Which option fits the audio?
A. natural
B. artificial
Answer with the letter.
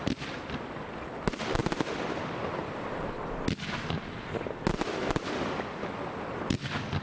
A